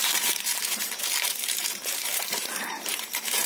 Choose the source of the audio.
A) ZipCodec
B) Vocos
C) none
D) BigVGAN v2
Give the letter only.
D